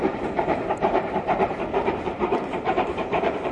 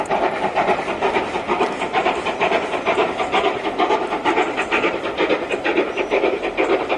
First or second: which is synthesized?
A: first